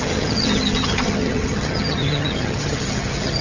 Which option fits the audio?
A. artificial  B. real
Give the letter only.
A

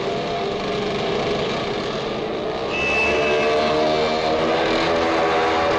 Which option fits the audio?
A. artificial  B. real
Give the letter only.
B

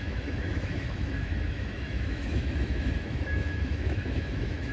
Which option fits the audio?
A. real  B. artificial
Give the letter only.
B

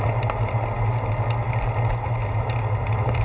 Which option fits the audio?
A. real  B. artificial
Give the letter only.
A